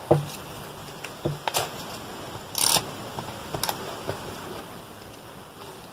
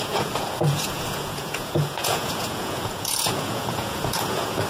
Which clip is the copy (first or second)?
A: second